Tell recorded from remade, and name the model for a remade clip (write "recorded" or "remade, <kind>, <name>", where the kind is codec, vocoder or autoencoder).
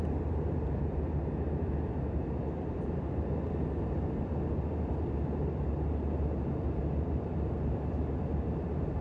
remade, vocoder, BigVGAN v2